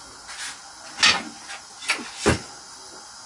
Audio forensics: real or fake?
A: real